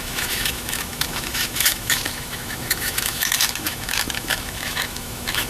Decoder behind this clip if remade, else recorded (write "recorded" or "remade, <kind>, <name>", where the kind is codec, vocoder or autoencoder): remade, autoencoder, DAC-VAE